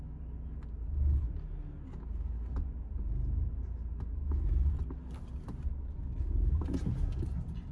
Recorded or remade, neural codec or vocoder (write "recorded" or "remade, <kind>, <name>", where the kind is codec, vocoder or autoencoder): recorded